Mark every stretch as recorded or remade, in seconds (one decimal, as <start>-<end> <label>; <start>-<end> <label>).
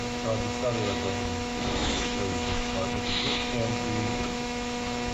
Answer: 0.0-5.1 remade